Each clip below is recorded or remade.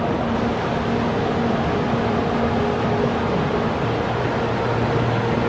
recorded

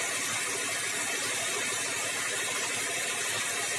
recorded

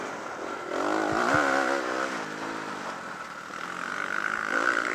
recorded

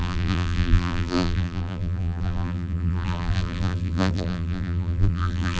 remade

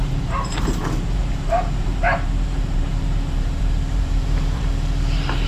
remade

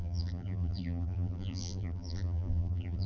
remade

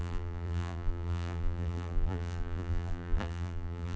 remade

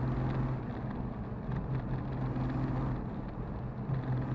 recorded